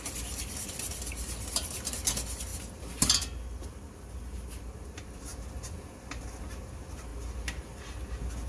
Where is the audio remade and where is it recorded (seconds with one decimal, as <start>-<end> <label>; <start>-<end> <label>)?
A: 0.0-8.5 recorded